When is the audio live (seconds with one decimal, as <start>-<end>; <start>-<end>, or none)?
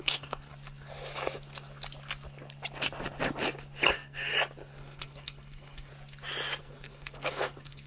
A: 0.5-3.9; 4.3-4.8; 5.9-6.6